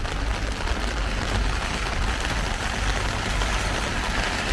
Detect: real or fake real